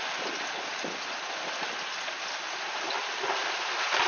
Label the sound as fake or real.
real